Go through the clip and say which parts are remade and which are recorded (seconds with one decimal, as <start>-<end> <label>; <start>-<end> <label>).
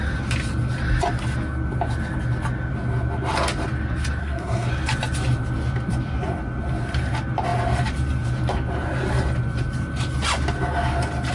0.0-4.2 recorded; 4.2-4.7 remade; 4.7-11.3 recorded